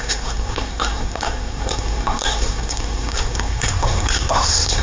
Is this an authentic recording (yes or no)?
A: no